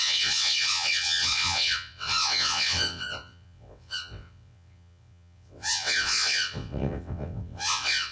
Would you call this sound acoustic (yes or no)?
no